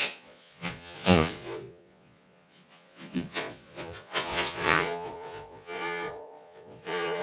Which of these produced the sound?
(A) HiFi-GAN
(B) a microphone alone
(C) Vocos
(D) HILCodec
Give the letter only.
C